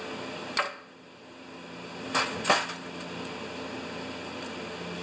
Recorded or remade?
recorded